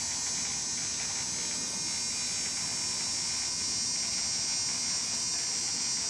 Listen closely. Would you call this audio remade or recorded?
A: recorded